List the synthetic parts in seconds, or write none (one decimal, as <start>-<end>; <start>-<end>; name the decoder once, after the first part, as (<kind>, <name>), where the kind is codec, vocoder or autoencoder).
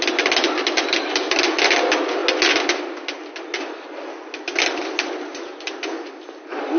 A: none